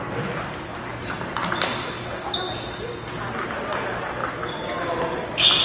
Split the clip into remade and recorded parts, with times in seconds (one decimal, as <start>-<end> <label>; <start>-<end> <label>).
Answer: 0.0-5.6 recorded